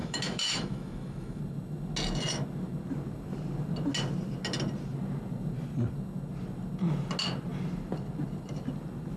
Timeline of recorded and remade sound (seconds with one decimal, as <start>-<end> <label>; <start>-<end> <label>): 0.0-1.4 remade; 1.4-9.2 recorded